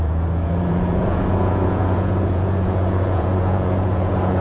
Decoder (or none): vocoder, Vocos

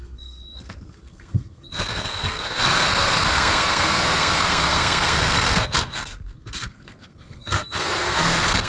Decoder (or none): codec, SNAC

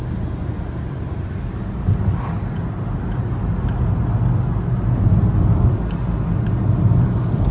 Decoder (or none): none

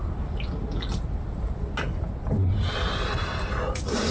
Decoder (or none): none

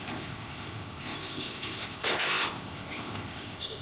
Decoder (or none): codec, ZipCodec